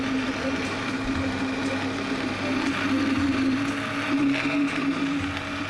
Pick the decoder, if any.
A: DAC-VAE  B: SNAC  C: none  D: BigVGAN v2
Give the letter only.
C